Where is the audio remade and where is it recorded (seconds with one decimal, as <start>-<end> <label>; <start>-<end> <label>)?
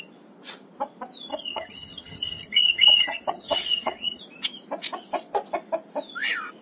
0.0-1.3 recorded; 1.3-4.2 remade; 4.2-6.6 recorded